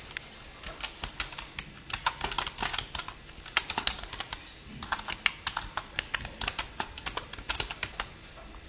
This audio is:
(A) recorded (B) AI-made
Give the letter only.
A